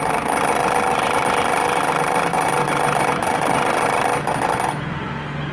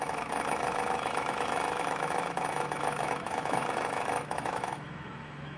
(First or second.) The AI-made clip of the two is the second